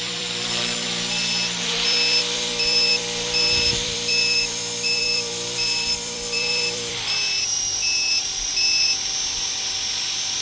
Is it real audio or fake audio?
fake